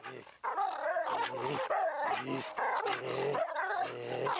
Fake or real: real